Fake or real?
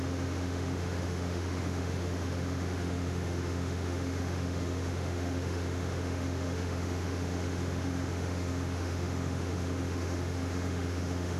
fake